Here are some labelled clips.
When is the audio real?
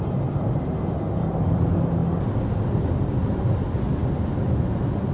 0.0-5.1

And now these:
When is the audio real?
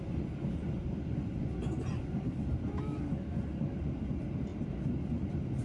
0.0-5.6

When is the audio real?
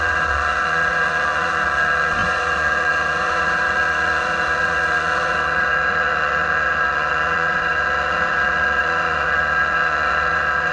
none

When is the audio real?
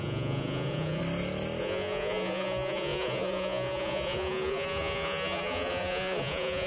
1.0-1.6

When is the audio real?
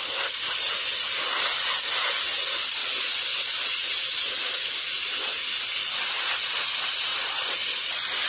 0.0-2.8; 4.2-7.1; 7.9-8.3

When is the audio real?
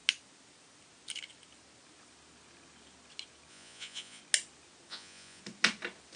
0.0-3.5; 4.2-4.9; 5.4-6.2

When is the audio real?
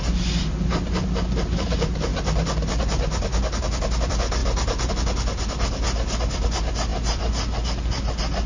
0.0-8.5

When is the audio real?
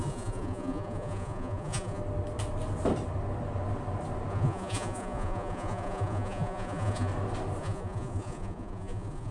2.0-4.3; 7.1-7.6